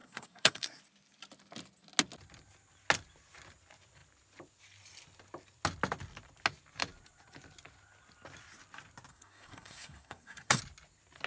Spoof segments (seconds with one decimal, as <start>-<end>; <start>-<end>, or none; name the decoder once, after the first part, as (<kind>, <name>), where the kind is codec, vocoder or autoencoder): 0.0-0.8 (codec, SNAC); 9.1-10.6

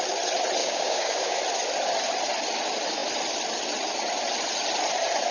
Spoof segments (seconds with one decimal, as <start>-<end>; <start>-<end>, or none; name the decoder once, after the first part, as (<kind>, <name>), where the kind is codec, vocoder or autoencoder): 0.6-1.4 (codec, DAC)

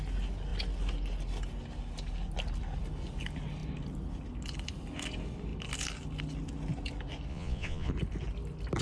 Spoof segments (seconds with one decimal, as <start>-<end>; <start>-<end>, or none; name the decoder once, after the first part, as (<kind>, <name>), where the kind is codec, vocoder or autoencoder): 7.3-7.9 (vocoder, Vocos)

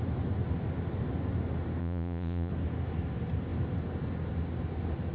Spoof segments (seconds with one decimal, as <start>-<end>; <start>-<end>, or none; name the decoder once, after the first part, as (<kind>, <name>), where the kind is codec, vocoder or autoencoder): 1.8-2.5 (vocoder, Vocos)